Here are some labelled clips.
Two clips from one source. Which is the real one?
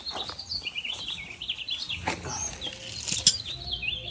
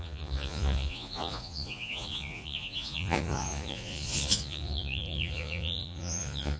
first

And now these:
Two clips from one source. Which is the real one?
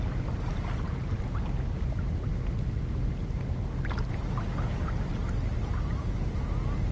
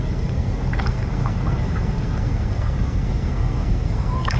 first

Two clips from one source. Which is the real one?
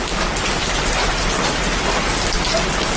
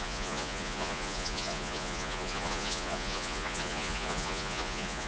first